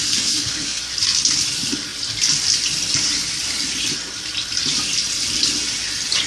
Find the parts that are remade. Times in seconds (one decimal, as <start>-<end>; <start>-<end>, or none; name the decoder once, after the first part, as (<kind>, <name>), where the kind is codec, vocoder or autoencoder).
0.0-0.8 (codec, SNAC)